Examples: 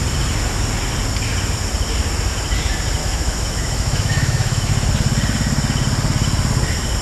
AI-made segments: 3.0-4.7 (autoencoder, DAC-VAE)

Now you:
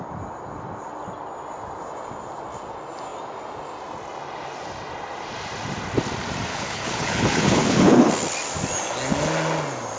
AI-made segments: 6.5-8.1 (codec, HILCodec)

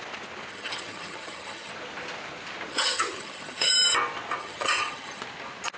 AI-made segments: 0.5-1.7 (vocoder, HiFi-GAN); 2.7-3.7; 4.4-5.2

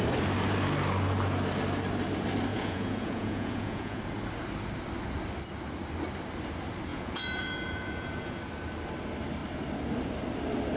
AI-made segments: 2.5-4.0 (vocoder, Vocos); 6.9-8.4

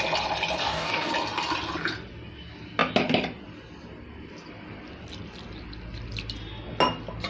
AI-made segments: 0.6-1.1 (codec, DAC)

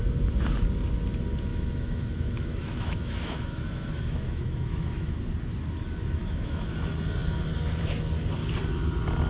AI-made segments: 1.5-5.2 (autoencoder, DAC-VAE); 6.2-6.7

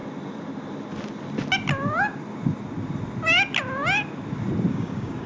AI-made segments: 4.7-5.3 (codec, DAC)

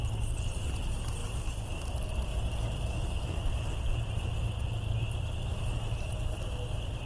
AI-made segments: none